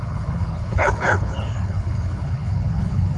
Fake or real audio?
fake